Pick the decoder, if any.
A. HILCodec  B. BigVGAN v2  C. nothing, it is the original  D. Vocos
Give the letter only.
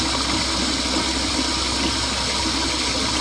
C